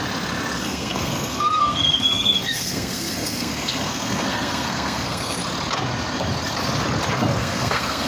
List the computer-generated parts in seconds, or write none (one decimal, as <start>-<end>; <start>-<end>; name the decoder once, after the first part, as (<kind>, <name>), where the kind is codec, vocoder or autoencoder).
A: 0.6-5.4 (codec, SNAC); 7.4-8.1